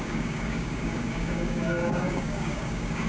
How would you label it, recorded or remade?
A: remade